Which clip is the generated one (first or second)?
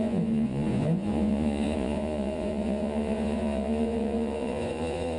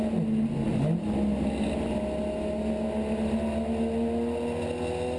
first